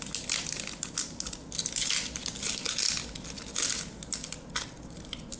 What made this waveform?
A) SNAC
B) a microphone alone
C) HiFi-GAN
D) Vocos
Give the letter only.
B